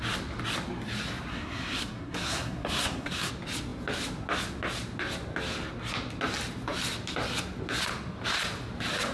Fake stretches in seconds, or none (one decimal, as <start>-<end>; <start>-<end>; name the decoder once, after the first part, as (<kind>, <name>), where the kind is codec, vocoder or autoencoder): 1.3-3.3 (codec, SNAC)